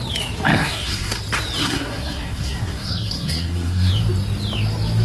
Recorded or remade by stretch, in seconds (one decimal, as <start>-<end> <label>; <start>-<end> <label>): 0.0-0.5 recorded; 0.5-1.2 remade; 1.2-1.6 recorded; 1.6-3.9 remade; 3.9-5.0 recorded